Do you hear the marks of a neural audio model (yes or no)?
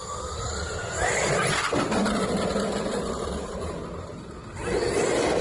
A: no